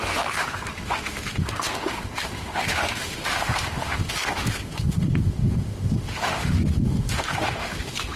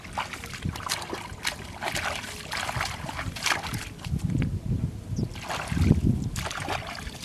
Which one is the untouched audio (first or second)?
second